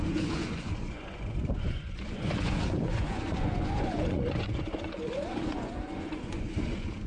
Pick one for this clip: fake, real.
fake